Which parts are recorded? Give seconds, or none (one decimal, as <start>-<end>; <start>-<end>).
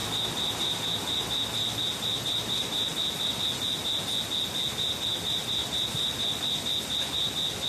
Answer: 0.0-7.7